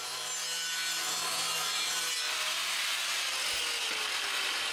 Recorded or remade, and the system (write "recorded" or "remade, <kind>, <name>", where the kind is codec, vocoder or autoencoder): recorded